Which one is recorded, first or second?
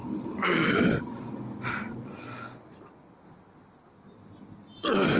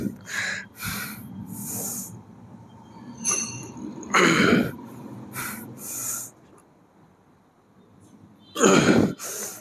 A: first